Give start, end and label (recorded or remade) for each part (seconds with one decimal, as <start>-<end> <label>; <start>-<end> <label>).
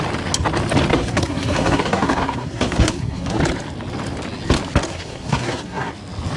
0.0-0.9 recorded; 0.9-3.4 remade; 3.4-4.9 recorded; 4.9-5.9 remade; 5.9-6.4 recorded